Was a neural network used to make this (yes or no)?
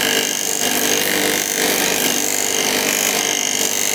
no